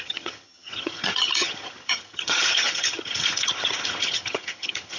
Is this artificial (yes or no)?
yes